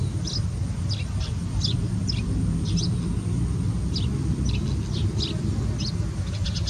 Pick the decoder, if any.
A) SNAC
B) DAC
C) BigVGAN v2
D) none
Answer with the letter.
D